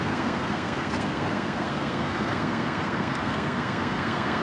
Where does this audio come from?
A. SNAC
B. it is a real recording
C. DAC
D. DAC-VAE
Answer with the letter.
A